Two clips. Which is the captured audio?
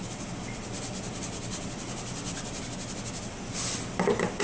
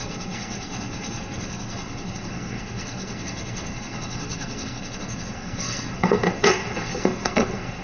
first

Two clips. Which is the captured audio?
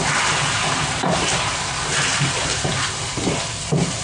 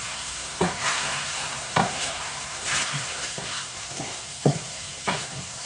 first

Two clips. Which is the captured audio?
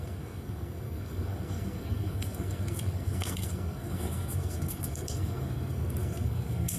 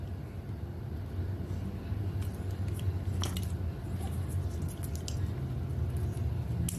second